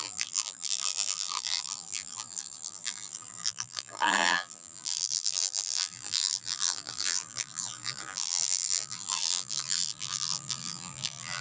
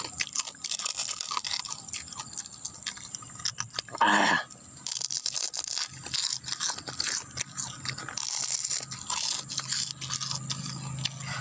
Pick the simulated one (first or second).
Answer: first